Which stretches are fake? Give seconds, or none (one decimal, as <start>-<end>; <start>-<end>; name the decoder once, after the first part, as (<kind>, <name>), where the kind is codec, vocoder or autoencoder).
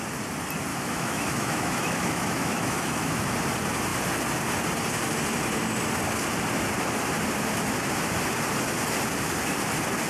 0.7-3.3 (autoencoder, DAC-VAE)